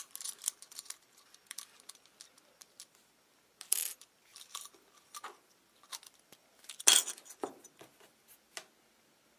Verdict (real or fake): real